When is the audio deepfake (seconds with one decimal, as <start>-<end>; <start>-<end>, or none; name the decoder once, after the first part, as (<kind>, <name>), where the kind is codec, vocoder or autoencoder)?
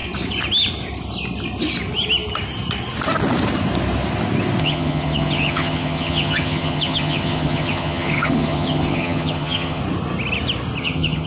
4.6-9.8 (vocoder, HiFi-GAN); 10.8-11.3